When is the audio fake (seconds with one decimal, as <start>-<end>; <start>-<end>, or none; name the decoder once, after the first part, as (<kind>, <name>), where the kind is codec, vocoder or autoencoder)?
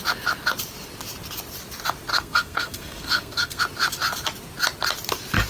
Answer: 2.1-3.6 (codec, SNAC)